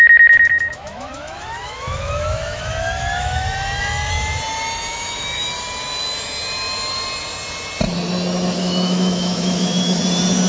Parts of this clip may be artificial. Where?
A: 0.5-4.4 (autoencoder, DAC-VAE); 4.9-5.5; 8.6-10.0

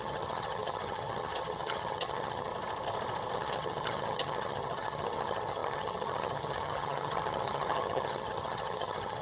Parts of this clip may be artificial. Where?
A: 0.0-2.5 (vocoder, HiFi-GAN); 3.3-9.2